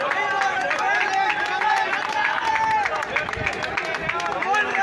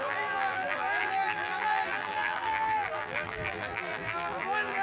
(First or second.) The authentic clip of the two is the first